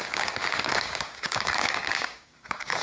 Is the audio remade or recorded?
remade